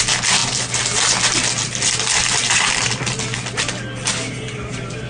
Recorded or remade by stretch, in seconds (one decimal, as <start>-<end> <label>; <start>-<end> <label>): 0.0-5.1 recorded